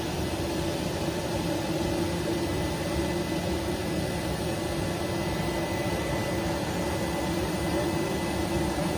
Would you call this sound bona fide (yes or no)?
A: yes